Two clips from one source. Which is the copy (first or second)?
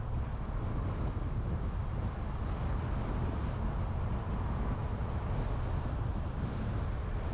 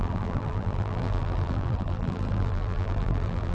second